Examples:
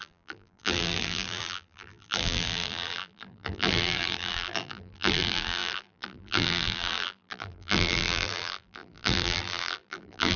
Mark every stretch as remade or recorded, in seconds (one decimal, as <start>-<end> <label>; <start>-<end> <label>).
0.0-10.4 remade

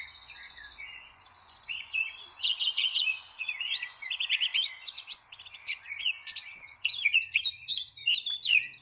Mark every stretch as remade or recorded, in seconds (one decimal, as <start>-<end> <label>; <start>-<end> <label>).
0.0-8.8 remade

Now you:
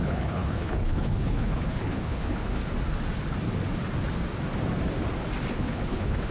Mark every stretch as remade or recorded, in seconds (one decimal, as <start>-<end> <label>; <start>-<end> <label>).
0.0-2.6 remade; 2.6-5.5 recorded; 5.5-6.3 remade